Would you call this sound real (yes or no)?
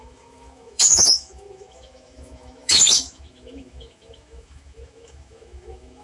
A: no